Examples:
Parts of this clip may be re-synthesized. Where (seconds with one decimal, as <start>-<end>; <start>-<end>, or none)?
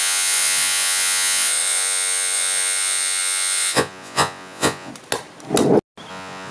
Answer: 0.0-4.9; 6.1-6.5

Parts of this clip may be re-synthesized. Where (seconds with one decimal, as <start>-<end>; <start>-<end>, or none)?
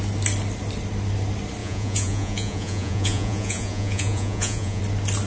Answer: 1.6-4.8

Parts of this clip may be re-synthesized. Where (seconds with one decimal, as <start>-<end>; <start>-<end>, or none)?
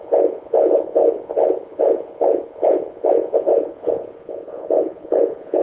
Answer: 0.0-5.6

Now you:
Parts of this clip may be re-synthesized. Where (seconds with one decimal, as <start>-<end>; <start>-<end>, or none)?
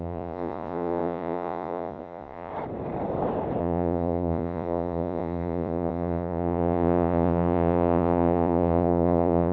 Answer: 0.0-2.5; 3.6-9.5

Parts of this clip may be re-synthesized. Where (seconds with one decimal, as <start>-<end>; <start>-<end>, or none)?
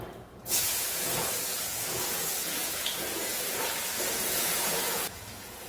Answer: 0.0-5.7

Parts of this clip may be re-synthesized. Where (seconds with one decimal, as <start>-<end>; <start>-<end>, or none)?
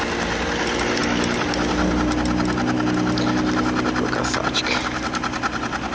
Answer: none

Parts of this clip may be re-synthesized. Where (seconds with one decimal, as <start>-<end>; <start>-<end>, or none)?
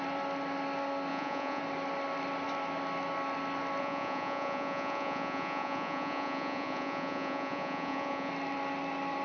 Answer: 1.1-1.6; 3.8-8.3